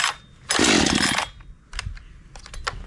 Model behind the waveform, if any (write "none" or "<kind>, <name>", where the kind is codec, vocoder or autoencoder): none